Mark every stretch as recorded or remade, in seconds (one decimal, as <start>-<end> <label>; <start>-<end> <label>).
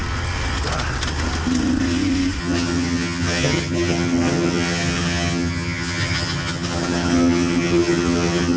0.0-2.4 recorded; 2.4-8.6 remade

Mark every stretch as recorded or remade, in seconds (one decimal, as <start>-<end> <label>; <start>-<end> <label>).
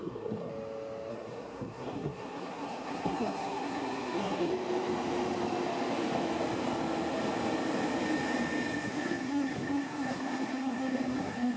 0.0-0.5 remade; 0.5-1.1 recorded; 1.1-4.5 remade; 4.5-8.9 recorded; 8.9-11.6 remade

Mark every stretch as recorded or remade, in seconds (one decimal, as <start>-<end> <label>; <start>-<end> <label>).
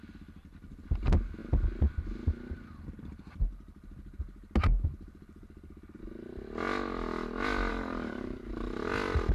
0.0-7.7 recorded; 7.7-8.5 remade; 8.5-9.3 recorded